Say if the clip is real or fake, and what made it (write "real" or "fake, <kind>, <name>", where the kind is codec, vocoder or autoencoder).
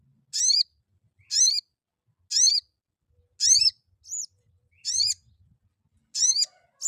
real